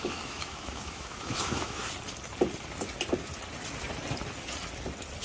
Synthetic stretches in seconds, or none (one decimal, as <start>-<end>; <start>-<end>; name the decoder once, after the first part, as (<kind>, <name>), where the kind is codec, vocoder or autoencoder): 0.0-1.8 (autoencoder, DAC-VAE)